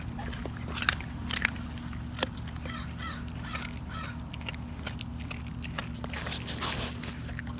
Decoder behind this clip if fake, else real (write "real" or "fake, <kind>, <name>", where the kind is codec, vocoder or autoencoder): real